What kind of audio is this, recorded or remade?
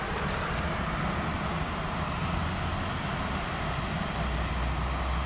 recorded